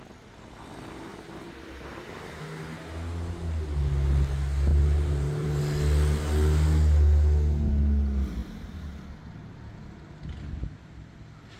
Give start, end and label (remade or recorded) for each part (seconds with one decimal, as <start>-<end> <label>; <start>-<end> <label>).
0.0-4.7 recorded; 4.7-5.6 remade; 5.6-8.4 recorded; 8.4-9.6 remade; 9.6-11.6 recorded